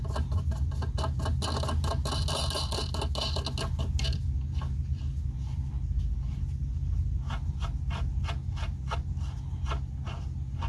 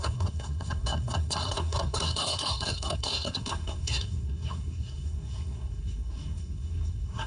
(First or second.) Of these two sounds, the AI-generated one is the second